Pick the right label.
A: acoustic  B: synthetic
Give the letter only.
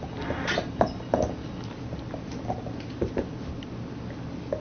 A